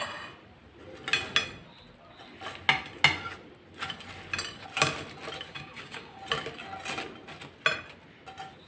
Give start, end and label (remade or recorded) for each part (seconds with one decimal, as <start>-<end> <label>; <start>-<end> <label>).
0.0-5.5 recorded; 5.5-6.2 remade; 6.2-8.7 recorded